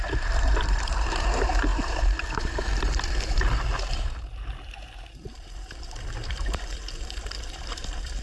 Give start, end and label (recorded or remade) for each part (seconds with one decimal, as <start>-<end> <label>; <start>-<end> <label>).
0.0-8.2 remade